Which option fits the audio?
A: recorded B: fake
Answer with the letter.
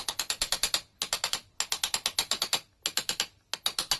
A